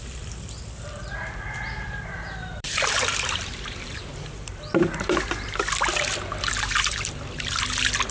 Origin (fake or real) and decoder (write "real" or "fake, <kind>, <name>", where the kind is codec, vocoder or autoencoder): fake, vocoder, BigVGAN v2